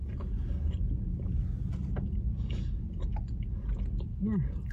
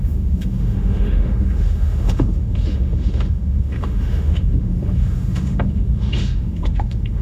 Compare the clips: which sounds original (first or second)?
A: first